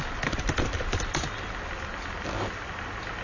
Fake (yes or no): no